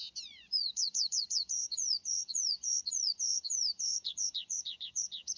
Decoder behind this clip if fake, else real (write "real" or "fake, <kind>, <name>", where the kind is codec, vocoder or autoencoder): fake, vocoder, Vocos